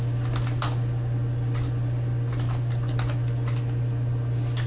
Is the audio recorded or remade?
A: recorded